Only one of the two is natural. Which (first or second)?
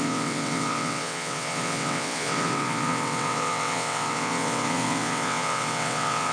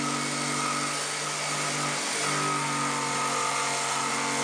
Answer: second